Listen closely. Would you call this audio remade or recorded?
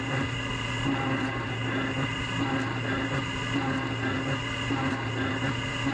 recorded